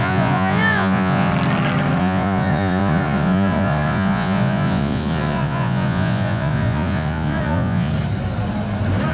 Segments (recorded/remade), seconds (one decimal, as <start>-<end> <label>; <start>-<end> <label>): 0.0-1.3 remade; 1.3-2.0 recorded; 2.0-7.9 remade; 7.9-9.1 recorded